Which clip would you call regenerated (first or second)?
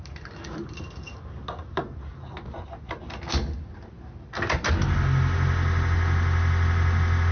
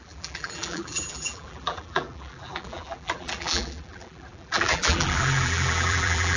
second